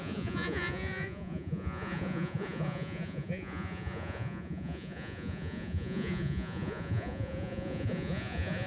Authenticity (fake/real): fake